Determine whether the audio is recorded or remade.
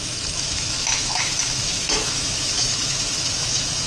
remade